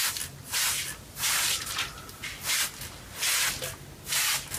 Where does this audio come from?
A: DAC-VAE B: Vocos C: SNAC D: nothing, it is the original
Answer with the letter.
D